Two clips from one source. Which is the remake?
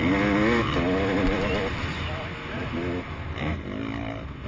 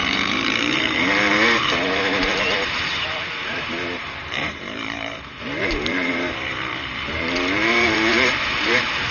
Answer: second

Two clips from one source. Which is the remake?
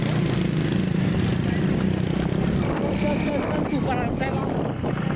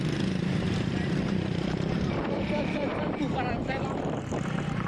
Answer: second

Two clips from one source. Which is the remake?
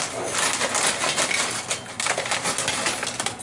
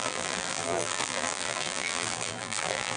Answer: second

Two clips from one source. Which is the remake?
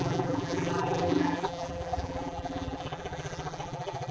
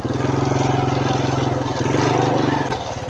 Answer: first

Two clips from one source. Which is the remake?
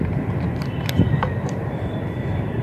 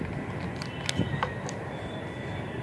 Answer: first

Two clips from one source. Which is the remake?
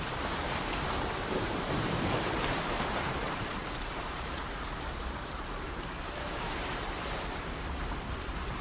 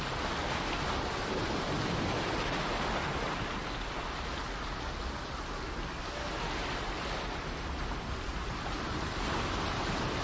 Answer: first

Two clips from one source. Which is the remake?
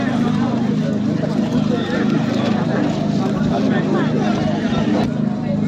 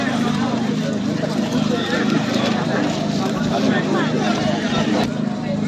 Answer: second